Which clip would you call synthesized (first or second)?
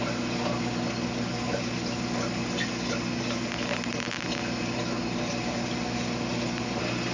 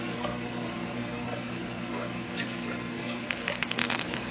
second